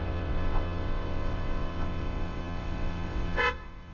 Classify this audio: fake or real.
fake